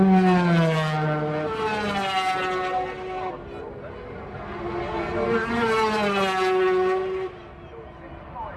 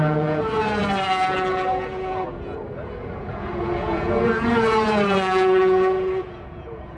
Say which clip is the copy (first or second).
second